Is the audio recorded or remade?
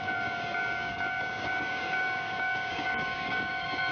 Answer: remade